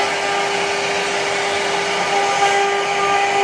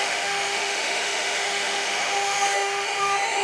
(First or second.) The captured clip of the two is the first